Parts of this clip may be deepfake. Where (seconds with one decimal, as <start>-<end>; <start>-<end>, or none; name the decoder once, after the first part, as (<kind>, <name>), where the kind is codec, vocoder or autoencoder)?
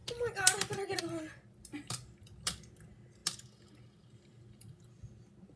none